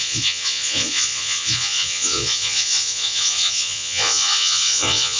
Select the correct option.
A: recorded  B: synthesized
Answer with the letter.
B